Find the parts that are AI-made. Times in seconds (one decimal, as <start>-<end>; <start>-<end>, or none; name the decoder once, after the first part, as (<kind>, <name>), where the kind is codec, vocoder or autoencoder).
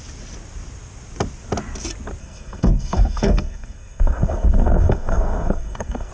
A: 2.2-6.1 (codec, SNAC)